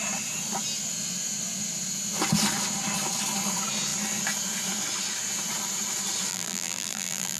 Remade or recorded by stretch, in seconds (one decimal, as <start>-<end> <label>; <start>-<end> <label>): 0.0-6.3 recorded; 6.3-7.4 remade